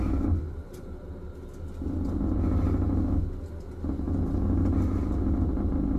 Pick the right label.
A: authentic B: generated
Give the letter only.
A